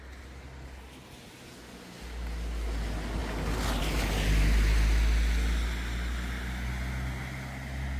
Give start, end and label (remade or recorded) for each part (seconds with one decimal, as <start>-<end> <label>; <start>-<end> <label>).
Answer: 0.0-8.0 recorded